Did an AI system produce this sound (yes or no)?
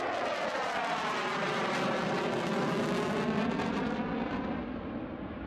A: no